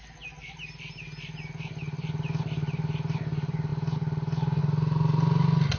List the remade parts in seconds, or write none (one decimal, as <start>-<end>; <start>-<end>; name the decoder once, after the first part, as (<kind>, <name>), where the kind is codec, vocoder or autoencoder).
none